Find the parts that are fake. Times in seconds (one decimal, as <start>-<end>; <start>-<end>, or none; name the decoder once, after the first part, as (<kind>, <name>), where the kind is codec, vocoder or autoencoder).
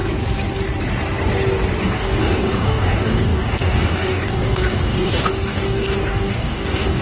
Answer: 1.8-7.0 (codec, DAC)